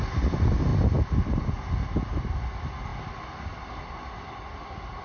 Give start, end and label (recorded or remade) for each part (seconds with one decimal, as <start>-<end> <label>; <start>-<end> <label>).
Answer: 0.0-5.0 recorded